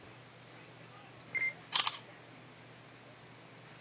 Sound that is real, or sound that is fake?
real